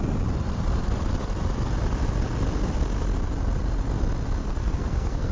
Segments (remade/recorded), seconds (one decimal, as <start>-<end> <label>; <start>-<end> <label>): 0.0-4.4 recorded; 4.4-5.3 remade